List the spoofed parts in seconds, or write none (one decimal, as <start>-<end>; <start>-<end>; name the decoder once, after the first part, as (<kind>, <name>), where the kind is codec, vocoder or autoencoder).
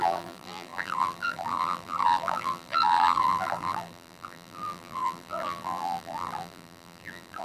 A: 0.0-7.4 (vocoder, BigVGAN v2)